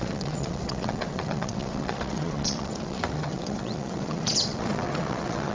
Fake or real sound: fake